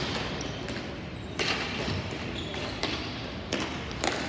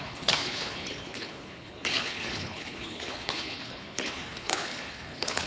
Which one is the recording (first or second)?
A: first